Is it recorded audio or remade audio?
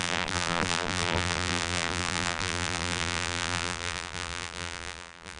remade